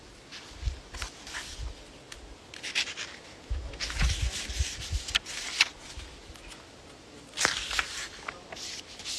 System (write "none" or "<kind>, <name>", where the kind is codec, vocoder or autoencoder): none